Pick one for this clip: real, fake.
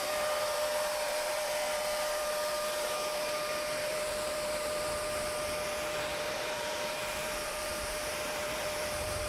fake